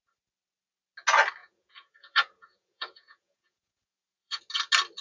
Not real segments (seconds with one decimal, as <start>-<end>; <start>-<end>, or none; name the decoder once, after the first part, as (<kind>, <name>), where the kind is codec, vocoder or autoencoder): 1.4-4.4 (vocoder, Vocos)